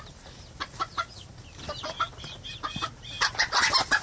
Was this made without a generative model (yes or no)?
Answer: yes